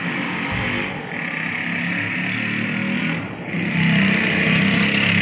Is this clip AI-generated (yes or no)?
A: no